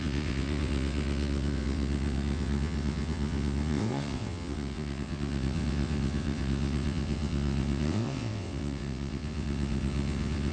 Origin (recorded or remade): remade